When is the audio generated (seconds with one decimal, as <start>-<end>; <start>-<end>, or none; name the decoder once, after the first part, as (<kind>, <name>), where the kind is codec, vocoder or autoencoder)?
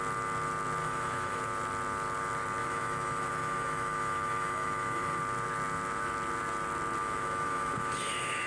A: 0.8-1.4 (autoencoder, DAC-VAE); 2.6-5.2; 7.0-7.9